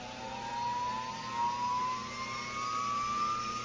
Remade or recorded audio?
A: recorded